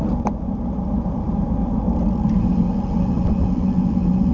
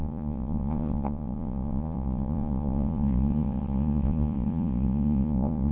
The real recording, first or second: first